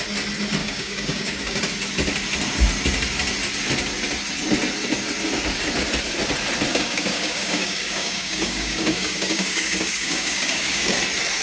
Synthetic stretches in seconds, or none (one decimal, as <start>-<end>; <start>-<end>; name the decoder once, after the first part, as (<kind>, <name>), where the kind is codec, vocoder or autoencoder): 0.6-1.6 (codec, DAC); 6.7-11.0